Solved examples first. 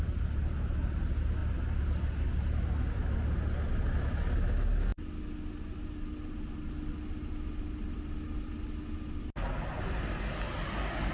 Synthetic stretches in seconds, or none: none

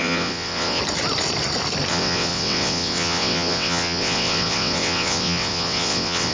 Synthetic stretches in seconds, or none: 0.0-0.8 (vocoder, WaveNeXt); 1.9-6.3

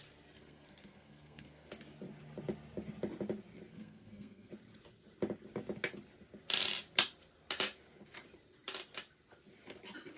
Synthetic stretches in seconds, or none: 0.4-1.7 (codec, SNAC); 3.7-4.5